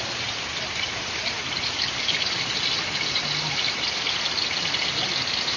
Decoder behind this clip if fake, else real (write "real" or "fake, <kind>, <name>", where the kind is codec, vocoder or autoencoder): real